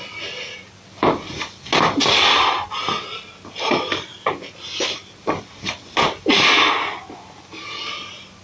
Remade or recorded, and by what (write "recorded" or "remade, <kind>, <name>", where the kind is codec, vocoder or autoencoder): recorded